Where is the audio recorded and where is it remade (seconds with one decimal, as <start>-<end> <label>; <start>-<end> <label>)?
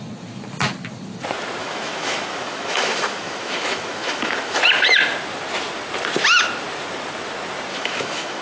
0.0-1.6 recorded; 1.6-4.6 remade; 4.6-7.7 recorded; 7.7-8.4 remade